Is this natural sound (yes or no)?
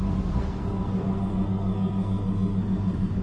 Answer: no